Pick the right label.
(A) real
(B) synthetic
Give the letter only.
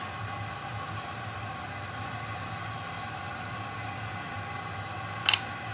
A